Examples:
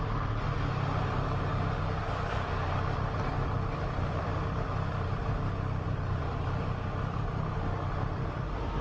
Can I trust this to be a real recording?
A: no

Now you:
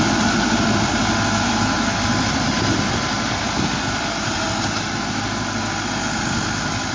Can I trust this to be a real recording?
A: yes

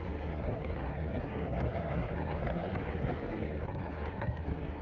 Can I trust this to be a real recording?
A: no